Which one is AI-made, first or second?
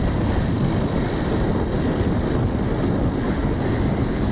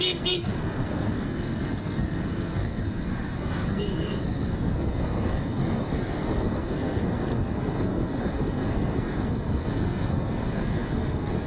second